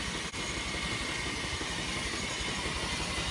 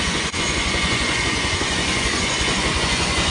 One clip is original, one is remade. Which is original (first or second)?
first